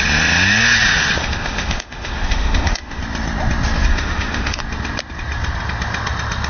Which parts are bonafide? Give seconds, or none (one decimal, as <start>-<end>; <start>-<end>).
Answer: 0.0-1.2; 3.0-3.9; 4.6-6.5